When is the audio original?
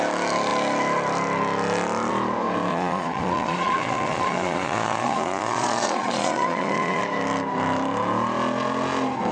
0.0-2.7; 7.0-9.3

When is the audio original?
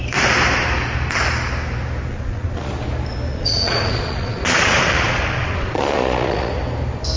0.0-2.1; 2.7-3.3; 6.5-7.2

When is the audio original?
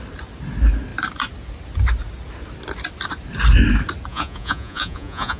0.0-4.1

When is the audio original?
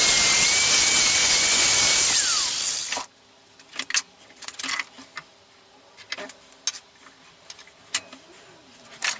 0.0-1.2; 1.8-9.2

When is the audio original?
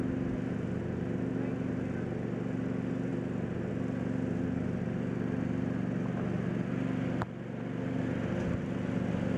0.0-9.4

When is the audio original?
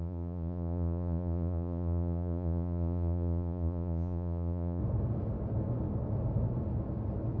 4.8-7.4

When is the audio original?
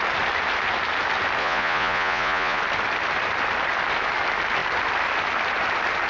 0.0-1.4; 2.6-6.1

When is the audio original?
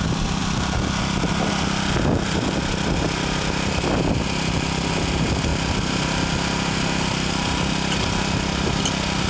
0.0-9.3